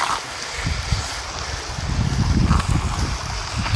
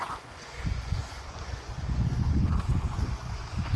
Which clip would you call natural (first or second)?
first